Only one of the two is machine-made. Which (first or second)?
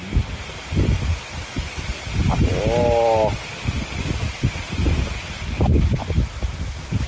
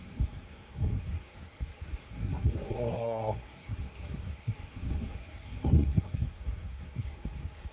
second